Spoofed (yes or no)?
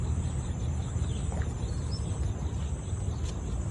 no